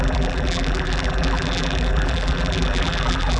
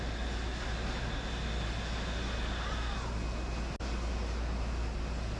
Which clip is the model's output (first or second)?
first